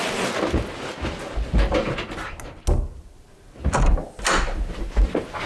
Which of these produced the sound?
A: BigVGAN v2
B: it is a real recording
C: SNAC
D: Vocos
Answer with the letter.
B